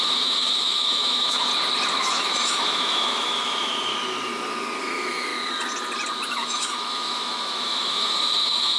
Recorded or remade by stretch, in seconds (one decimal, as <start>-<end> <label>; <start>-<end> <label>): 0.0-1.5 remade; 1.5-2.0 recorded; 2.0-3.9 remade; 3.9-4.8 recorded; 4.8-5.3 remade; 5.3-6.3 recorded; 6.3-8.8 remade